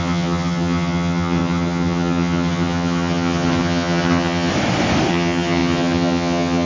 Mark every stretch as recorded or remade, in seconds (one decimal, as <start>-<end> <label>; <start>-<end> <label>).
0.0-4.5 remade; 4.5-5.1 recorded; 5.1-6.7 remade